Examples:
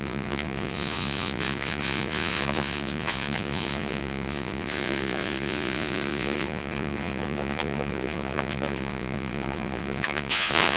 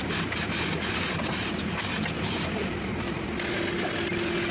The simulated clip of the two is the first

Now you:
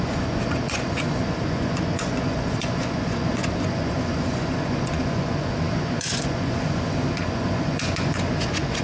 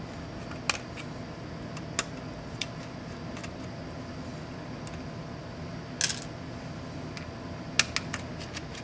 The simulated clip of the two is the first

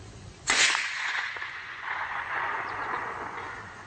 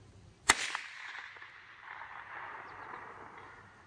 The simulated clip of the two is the first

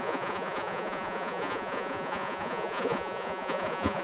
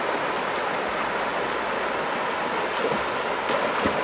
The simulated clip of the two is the first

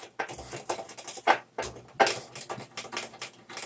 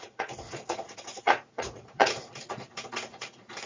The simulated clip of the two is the second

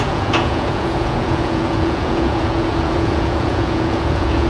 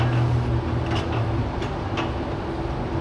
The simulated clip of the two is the first